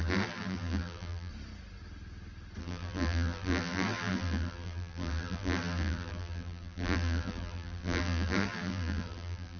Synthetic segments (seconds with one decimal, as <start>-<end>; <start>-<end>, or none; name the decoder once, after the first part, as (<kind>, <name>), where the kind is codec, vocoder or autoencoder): 0.0-1.3 (vocoder, BigVGAN v2); 2.6-9.6